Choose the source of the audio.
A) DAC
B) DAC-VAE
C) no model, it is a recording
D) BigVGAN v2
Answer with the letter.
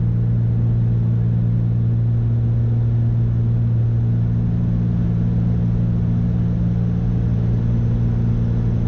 C